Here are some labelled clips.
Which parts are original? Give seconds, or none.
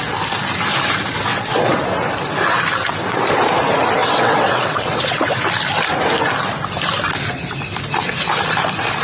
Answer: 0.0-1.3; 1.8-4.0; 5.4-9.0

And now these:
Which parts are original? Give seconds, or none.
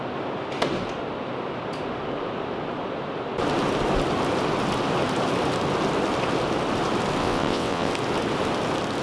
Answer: 0.0-7.2; 7.9-9.0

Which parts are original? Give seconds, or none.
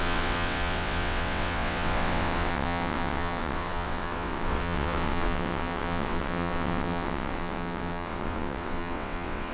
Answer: none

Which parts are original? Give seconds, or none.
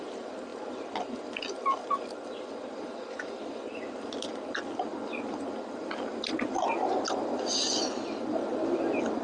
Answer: 0.0-9.2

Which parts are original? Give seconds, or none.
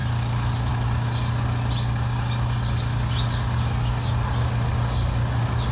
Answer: 0.0-5.7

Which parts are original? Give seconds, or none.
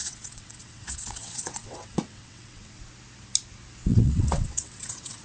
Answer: 2.8-3.9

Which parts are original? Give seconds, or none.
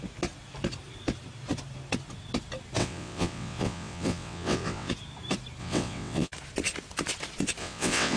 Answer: 0.0-2.8; 4.9-5.6; 6.3-7.6